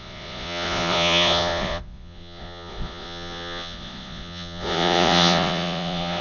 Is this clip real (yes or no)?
no